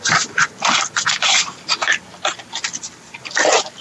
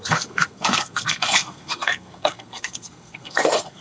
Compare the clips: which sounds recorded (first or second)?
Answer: first